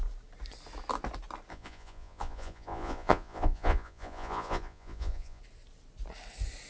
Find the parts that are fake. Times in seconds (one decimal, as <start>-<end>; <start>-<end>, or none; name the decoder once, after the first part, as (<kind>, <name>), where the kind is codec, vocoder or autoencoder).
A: 1.5-5.4 (vocoder, Vocos)